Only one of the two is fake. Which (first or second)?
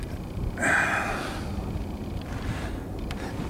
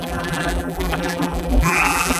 second